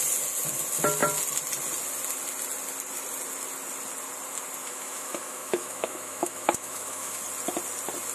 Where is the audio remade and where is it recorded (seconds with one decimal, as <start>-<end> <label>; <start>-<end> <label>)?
0.0-4.6 recorded; 4.6-7.2 remade; 7.2-8.1 recorded